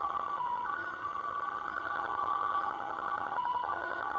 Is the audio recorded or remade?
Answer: remade